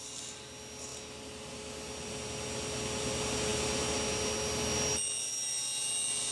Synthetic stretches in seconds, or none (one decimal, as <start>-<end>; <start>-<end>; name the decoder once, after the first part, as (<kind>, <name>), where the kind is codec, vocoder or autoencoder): none